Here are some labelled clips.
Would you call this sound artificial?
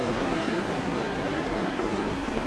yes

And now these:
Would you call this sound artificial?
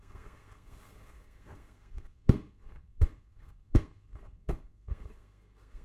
yes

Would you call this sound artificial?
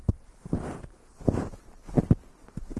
no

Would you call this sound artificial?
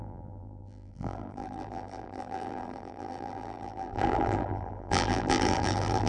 yes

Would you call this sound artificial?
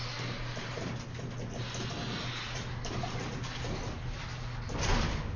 no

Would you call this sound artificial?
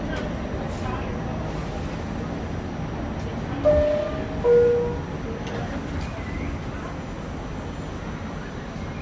no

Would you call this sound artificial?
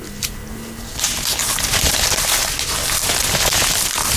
no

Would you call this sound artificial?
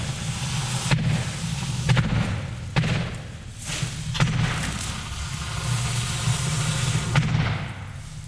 no